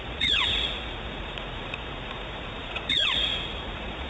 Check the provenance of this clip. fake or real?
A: fake